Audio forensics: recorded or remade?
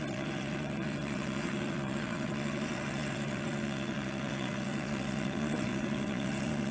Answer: remade